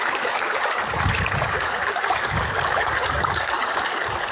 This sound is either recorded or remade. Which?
remade